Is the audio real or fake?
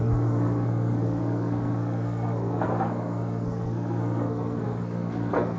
fake